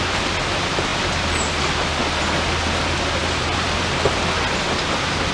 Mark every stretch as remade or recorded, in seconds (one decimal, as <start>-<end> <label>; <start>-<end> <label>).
0.0-3.2 recorded; 3.2-4.1 remade; 4.1-5.3 recorded